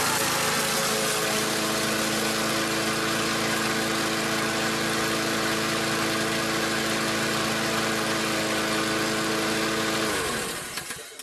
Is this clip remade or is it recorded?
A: recorded